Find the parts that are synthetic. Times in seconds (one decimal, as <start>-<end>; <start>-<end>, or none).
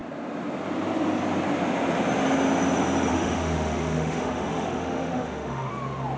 3.1-5.7